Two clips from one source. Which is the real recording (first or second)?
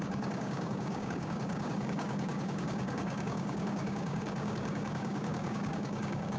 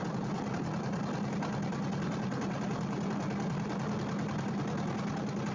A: second